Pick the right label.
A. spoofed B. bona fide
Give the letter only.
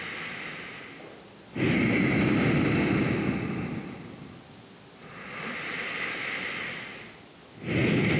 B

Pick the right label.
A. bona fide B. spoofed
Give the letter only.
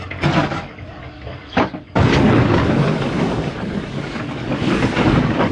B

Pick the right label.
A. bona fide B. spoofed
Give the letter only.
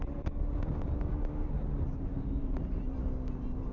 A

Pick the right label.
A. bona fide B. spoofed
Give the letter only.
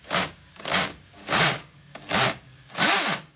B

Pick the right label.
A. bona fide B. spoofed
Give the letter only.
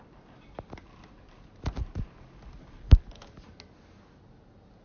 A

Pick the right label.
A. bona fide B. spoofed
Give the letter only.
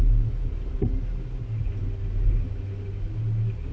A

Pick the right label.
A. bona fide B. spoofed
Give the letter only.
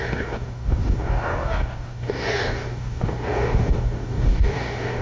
B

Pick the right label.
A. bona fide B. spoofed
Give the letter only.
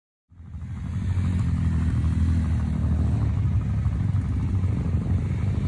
A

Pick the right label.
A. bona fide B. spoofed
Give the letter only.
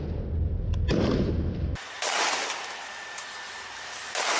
A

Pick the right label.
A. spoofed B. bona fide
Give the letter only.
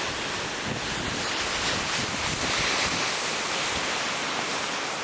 B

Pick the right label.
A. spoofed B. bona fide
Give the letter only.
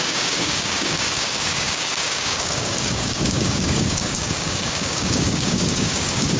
A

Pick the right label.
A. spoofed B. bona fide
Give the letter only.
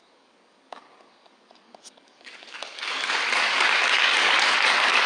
A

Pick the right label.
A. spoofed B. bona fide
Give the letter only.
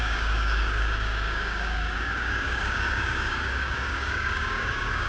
A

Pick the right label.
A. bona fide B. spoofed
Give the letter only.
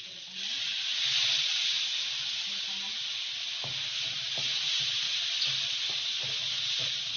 A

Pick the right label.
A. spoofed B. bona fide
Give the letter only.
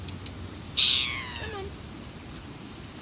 B